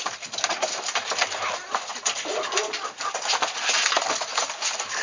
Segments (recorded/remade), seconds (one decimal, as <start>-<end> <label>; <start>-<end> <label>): 0.0-5.0 recorded

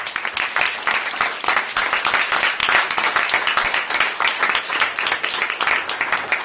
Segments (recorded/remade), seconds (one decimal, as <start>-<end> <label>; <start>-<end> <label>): 0.0-2.6 remade; 2.6-4.6 recorded; 4.6-6.4 remade

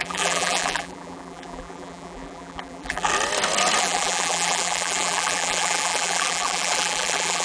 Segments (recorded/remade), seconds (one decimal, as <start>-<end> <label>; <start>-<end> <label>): 0.0-3.1 remade; 3.1-3.8 recorded; 3.8-7.4 remade

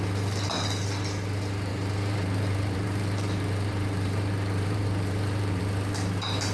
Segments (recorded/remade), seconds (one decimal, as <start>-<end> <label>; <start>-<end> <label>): 0.0-1.7 recorded; 1.7-5.6 remade; 5.6-6.5 recorded

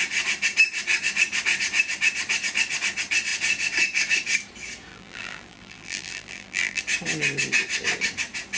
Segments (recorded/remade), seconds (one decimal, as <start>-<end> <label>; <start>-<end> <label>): 0.0-4.9 recorded; 4.9-6.8 remade; 6.8-8.6 recorded

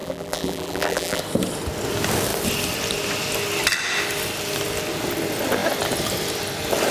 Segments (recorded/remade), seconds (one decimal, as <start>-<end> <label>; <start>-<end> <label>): 0.0-1.2 remade; 1.2-6.9 recorded